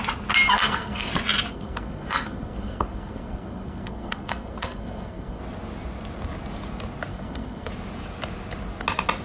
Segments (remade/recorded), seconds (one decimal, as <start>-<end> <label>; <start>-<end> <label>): 0.0-0.5 recorded; 0.5-1.1 remade; 1.1-1.5 recorded; 1.5-5.4 remade; 5.4-7.1 recorded; 7.1-7.7 remade; 7.7-9.2 recorded